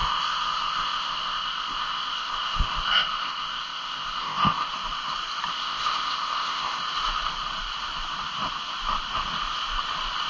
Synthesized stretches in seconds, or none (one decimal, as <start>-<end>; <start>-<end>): 0.0-4.7; 5.5-6.8